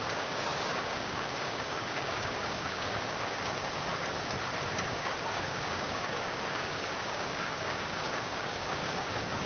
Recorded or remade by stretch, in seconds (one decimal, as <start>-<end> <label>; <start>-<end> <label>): 0.0-3.9 remade; 3.9-4.7 recorded; 4.7-9.5 remade